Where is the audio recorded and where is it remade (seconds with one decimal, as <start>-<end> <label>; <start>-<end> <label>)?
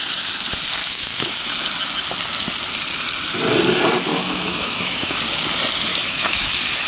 0.0-0.8 recorded; 0.8-1.5 remade; 1.5-4.1 recorded; 4.1-5.2 remade; 5.2-5.9 recorded; 5.9-6.5 remade; 6.5-6.9 recorded